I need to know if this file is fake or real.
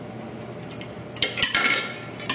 real